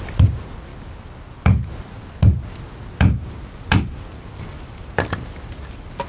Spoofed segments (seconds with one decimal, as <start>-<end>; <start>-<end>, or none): none